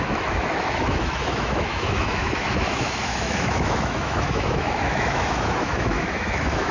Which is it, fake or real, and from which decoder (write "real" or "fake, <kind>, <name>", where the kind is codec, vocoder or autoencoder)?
fake, autoencoder, DAC-VAE